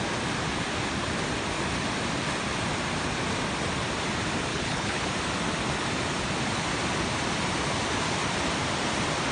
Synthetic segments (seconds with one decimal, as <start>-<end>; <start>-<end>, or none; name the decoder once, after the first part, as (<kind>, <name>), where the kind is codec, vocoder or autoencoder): 4.5-5.1 (codec, HILCodec)